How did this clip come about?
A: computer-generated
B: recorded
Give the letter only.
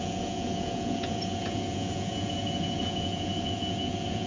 A